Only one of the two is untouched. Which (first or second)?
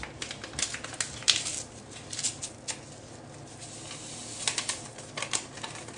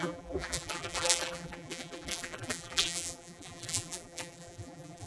first